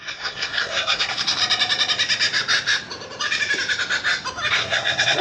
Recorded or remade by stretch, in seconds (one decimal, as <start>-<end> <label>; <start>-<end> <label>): 0.0-1.4 remade; 1.4-4.5 recorded; 4.5-5.2 remade